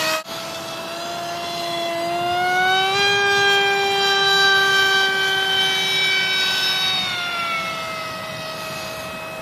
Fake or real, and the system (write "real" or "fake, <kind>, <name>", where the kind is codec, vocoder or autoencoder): real